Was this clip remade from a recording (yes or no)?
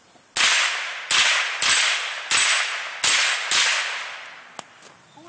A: no